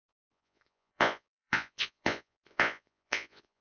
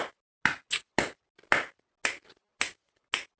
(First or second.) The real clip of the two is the second